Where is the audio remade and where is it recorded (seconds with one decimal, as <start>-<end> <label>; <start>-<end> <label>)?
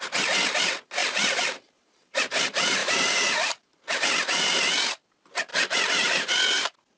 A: 0.0-1.0 recorded; 1.0-2.4 remade; 2.4-2.8 recorded; 2.8-3.7 remade; 3.7-5.5 recorded; 5.5-6.3 remade; 6.3-7.0 recorded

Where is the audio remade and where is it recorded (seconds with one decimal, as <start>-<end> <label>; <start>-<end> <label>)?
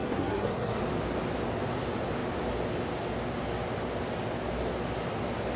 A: 0.0-0.8 remade; 0.8-5.6 recorded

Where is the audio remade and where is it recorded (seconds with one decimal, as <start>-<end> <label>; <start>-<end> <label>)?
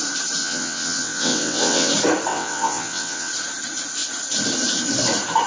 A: 0.0-0.4 recorded; 0.4-1.9 remade; 1.9-2.3 recorded; 2.3-3.3 remade; 3.3-5.5 recorded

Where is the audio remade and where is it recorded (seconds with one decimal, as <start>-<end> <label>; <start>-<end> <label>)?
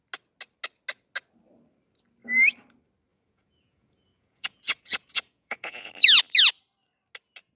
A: 0.0-3.1 recorded; 3.1-5.9 remade; 5.9-7.6 recorded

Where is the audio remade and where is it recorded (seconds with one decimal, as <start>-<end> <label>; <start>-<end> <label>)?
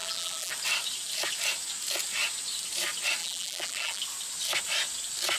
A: 0.0-0.5 remade; 0.5-3.2 recorded; 3.2-4.0 remade; 4.0-5.4 recorded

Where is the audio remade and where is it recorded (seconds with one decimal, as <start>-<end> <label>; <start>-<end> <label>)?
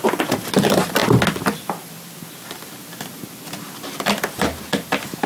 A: 0.0-1.0 remade; 1.0-4.2 recorded; 4.2-5.3 remade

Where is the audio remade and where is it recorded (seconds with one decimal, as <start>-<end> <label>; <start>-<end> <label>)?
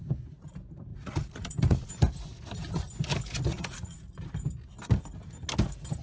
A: 0.0-0.9 recorded; 0.9-1.9 remade; 1.9-3.5 recorded; 3.5-4.1 remade; 4.1-6.0 recorded